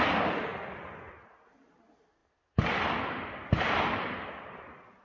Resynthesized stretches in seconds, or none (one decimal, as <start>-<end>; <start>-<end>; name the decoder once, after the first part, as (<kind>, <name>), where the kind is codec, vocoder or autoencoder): none